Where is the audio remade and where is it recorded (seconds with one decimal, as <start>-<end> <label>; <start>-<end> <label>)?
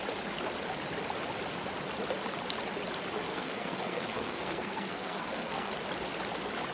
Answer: 0.0-3.3 recorded; 3.3-5.7 remade; 5.7-6.7 recorded